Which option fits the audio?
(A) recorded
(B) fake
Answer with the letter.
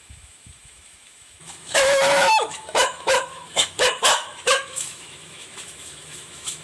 B